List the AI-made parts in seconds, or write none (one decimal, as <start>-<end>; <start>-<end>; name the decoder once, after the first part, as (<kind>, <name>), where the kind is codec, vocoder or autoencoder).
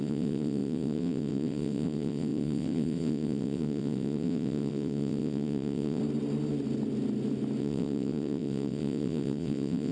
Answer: 0.0-6.0 (vocoder, WaveNeXt); 7.6-9.9